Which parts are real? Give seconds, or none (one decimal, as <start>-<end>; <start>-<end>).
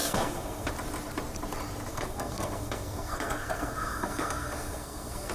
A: 0.7-1.9